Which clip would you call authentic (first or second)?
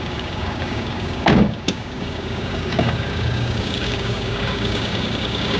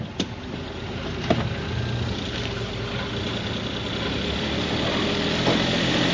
second